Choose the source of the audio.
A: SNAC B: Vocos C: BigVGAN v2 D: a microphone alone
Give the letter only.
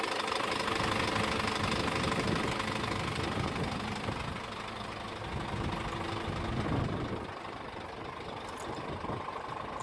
D